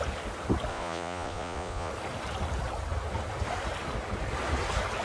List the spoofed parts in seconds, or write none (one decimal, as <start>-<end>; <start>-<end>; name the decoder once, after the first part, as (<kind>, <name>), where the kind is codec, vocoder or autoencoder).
0.7-1.9 (vocoder, Vocos)